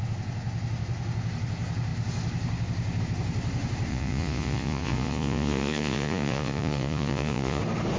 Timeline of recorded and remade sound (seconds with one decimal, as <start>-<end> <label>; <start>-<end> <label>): 0.0-3.9 recorded; 3.9-7.6 remade; 7.6-8.0 recorded